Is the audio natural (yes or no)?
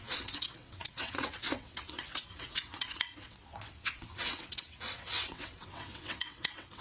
no